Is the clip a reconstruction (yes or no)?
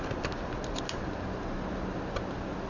no